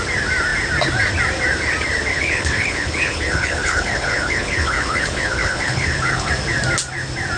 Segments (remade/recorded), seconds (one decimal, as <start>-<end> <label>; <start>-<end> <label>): 0.0-2.1 recorded; 2.1-6.3 remade; 6.3-7.4 recorded